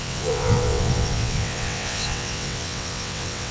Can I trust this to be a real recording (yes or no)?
no